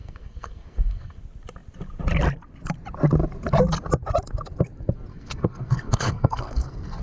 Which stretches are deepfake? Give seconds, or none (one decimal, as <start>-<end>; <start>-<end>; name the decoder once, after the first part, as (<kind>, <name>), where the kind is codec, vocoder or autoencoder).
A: 0.0-1.2 (codec, SNAC); 5.1-7.0